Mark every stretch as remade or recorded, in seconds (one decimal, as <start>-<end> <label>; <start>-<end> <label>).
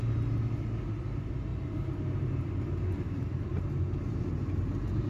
0.0-5.1 recorded